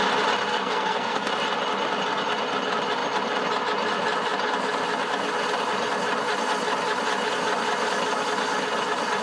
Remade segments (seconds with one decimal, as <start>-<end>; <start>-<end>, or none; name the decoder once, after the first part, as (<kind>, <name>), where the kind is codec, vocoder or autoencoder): 0.5-1.3 (codec, SNAC)